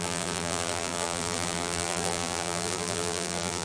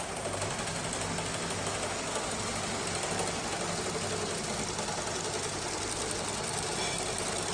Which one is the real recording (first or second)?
second